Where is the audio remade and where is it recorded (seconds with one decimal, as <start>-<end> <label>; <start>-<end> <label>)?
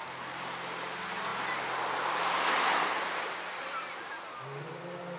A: 0.0-5.2 recorded